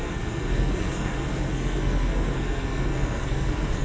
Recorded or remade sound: remade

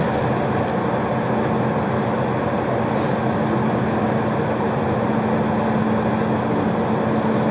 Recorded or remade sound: recorded